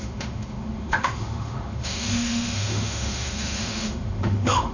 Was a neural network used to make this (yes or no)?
yes